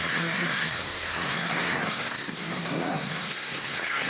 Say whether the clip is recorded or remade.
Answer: remade